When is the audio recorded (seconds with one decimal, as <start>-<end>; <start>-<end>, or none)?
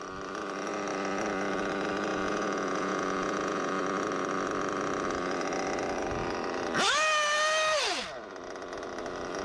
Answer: 0.0-2.1; 3.8-9.4